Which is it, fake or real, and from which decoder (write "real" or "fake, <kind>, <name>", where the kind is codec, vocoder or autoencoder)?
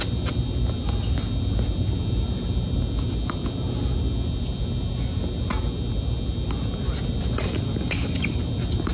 real